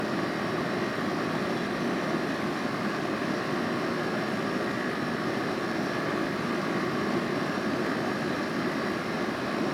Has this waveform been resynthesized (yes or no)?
no